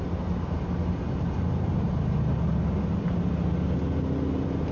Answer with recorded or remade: recorded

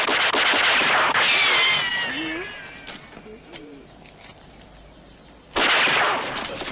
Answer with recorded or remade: recorded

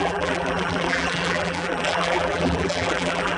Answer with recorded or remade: remade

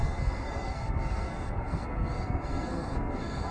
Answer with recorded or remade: remade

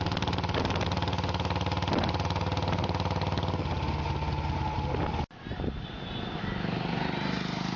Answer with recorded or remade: recorded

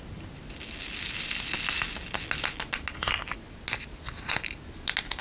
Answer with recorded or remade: recorded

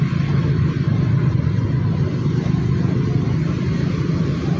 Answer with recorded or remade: recorded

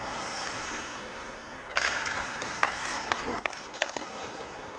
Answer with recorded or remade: remade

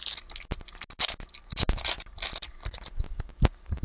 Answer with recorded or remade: recorded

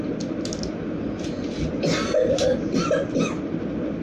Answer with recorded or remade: recorded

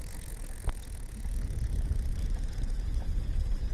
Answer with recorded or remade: remade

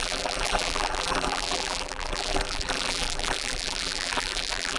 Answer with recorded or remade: remade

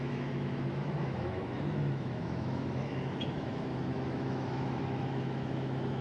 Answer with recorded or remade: remade